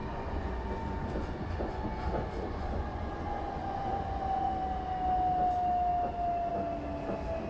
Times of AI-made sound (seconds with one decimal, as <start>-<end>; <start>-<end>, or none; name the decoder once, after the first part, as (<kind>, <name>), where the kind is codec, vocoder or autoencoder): 0.0-4.5 (vocoder, Vocos)